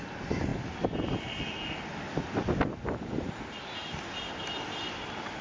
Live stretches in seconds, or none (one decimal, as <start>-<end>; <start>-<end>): 0.0-5.4